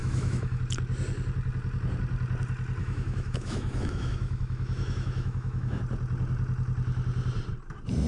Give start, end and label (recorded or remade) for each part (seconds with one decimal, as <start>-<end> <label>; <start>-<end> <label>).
0.0-0.6 remade; 0.6-2.8 recorded; 2.8-5.8 remade; 5.8-8.1 recorded